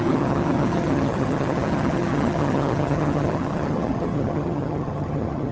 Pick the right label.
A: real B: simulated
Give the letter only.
B